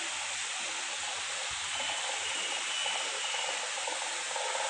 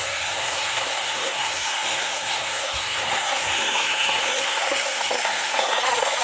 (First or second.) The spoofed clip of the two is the second